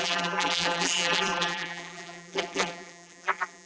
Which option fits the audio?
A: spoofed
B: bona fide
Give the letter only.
A